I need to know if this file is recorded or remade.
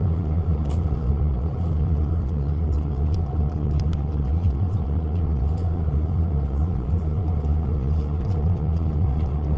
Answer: remade